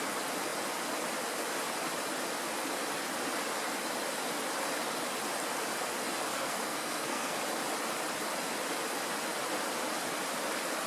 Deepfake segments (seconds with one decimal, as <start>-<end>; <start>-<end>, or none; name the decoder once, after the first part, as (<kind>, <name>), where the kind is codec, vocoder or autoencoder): 6.3-7.4 (codec, SNAC)